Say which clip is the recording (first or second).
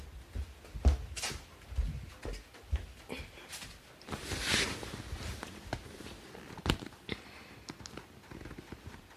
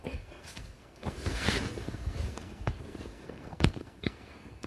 first